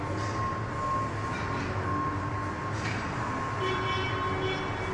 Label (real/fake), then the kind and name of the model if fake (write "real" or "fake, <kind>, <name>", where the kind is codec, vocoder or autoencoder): real